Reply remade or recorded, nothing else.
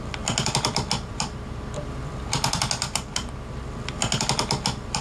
recorded